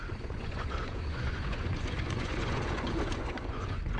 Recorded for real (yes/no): no